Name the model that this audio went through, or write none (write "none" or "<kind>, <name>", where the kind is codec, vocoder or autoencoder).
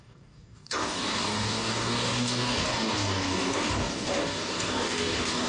codec, DAC